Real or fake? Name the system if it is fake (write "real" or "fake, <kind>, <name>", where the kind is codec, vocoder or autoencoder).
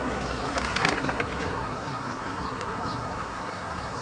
fake, codec, SNAC